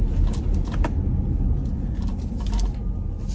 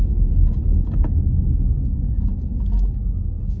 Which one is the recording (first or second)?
first